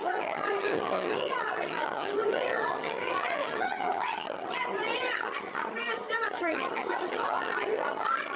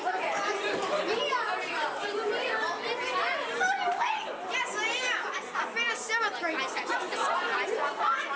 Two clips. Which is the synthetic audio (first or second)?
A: first